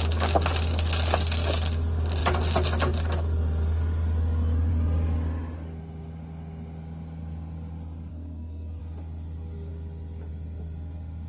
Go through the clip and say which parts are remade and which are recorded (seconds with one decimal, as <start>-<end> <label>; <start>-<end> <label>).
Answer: 0.0-8.1 recorded; 8.1-8.8 remade; 8.8-11.3 recorded